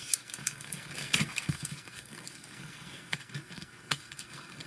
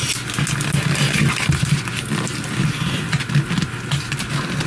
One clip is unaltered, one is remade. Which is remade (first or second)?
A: first